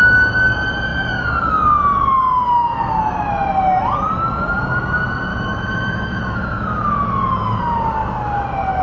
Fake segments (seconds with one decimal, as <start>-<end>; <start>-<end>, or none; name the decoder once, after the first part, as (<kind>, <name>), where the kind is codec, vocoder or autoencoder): 2.6-3.3 (autoencoder, DAC-VAE); 5.3-7.6